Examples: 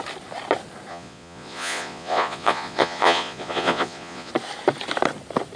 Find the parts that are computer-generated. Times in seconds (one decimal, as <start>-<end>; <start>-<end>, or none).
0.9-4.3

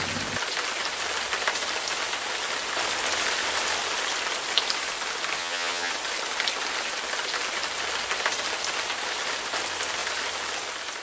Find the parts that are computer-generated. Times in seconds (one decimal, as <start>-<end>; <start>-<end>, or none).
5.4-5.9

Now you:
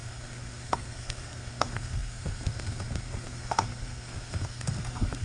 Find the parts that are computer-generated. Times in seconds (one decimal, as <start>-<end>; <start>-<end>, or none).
0.0-5.2